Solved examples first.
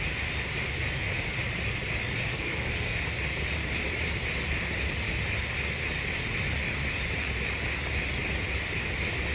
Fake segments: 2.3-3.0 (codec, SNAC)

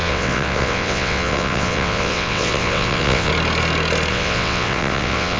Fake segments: 0.0-3.3 (vocoder, WaveNeXt); 4.1-5.4

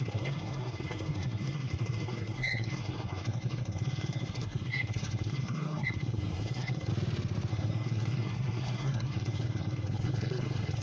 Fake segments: 0.0-6.9 (codec, SNAC); 7.5-10.8

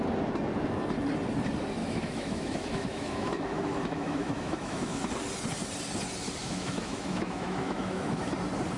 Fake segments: 1.8-5.1 (autoencoder, DAC-VAE); 6.4-8.3